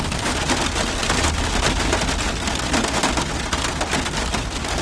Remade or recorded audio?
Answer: recorded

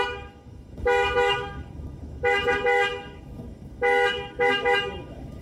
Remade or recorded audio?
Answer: remade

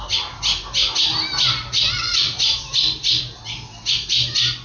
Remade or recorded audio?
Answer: recorded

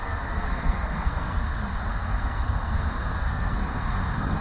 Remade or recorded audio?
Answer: remade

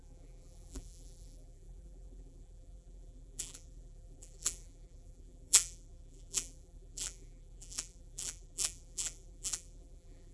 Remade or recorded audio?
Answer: remade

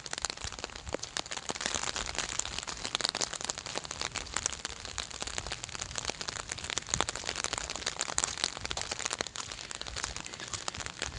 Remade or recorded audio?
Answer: recorded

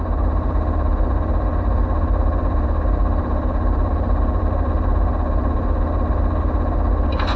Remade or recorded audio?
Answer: remade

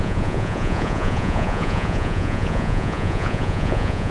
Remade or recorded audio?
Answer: remade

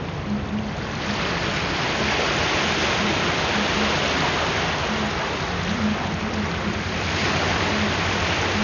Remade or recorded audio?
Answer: recorded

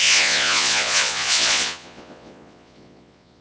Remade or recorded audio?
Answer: remade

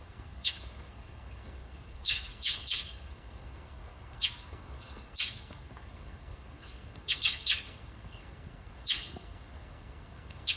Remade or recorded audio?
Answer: remade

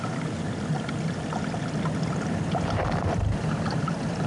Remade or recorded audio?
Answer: recorded